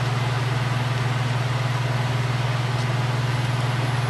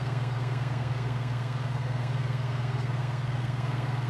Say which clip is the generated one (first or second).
second